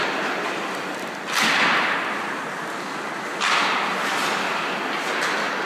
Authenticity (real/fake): real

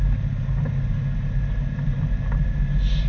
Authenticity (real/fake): real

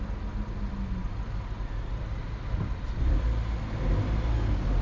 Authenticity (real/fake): real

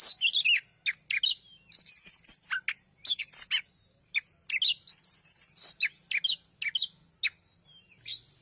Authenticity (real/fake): real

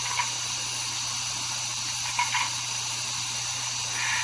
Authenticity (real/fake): real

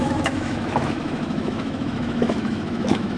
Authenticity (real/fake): fake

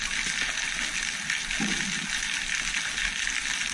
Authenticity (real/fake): real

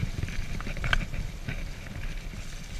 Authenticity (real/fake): real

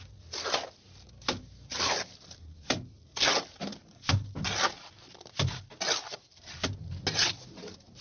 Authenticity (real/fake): real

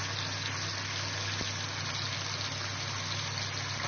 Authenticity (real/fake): real